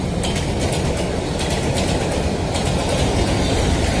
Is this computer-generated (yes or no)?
no